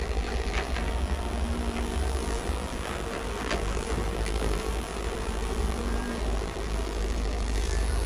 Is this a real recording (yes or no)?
no